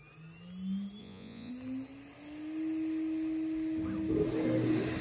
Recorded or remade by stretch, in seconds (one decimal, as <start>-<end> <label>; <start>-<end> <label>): 0.0-1.0 recorded; 1.0-1.5 remade; 1.5-5.0 recorded